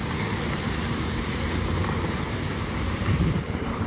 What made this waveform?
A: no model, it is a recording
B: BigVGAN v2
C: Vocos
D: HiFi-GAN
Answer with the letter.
B